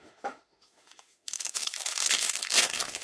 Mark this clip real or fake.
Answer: fake